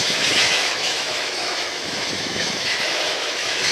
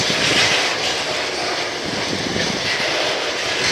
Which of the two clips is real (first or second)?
second